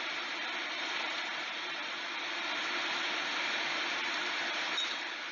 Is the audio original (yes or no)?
no